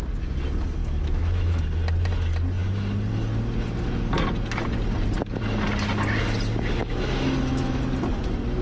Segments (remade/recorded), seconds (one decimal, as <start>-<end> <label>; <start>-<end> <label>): 0.0-0.8 recorded; 0.8-1.6 remade; 1.6-6.8 recorded; 6.8-7.8 remade; 7.8-8.6 recorded